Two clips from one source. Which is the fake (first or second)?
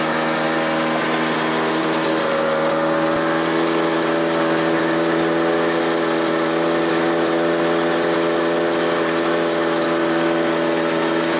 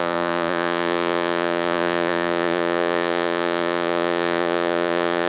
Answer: second